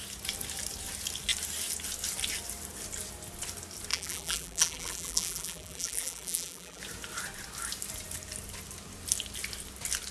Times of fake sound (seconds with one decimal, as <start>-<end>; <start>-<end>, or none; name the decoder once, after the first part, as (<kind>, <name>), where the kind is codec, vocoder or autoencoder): 3.9-6.8 (vocoder, BigVGAN v2)